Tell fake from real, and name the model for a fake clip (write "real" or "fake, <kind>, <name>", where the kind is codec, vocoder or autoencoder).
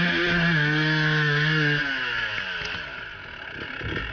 real